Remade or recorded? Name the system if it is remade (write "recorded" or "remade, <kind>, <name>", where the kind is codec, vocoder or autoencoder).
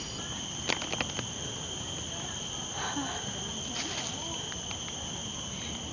recorded